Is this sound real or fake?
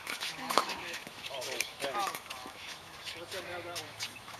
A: fake